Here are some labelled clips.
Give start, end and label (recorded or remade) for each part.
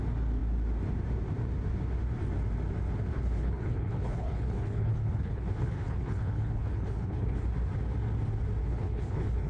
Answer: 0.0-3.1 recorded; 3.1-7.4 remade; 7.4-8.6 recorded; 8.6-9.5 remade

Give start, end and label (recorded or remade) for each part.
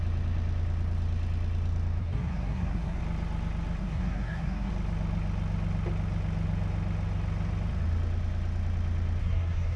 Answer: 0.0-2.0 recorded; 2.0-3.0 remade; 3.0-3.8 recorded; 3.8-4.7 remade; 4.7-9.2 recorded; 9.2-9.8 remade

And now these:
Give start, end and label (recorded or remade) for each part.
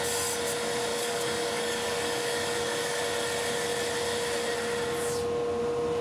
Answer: 0.0-0.9 recorded; 0.9-3.0 remade; 3.0-6.0 recorded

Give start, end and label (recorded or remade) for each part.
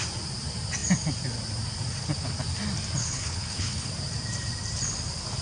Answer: 0.0-3.0 recorded; 3.0-3.9 remade; 3.9-5.4 recorded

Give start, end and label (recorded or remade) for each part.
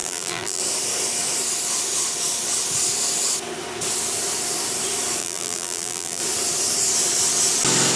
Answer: 0.0-0.6 remade; 0.6-5.2 recorded; 5.2-6.2 remade; 6.2-8.0 recorded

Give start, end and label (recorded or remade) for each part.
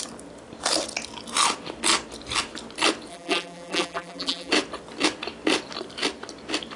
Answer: 0.0-3.1 recorded; 3.1-4.5 remade; 4.5-6.8 recorded